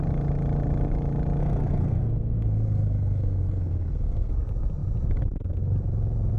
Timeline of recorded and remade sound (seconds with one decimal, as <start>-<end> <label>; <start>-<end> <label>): 0.0-1.4 recorded; 1.4-4.3 remade; 4.3-6.4 recorded